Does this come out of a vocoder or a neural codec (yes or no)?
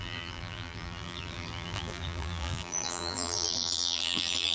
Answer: yes